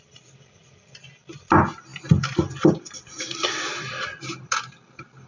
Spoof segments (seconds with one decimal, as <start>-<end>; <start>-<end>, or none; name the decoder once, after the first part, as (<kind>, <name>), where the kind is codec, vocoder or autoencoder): none